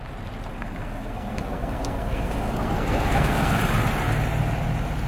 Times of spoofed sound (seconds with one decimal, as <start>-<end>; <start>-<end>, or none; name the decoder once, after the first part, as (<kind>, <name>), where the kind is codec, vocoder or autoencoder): 0.5-3.6 (codec, SNAC)